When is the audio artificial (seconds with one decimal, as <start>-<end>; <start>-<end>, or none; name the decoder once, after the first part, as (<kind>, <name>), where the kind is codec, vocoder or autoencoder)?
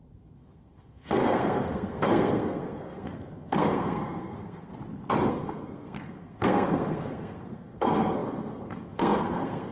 0.0-4.7 (codec, SNAC); 5.3-9.7